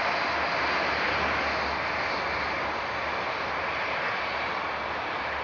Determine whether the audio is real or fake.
real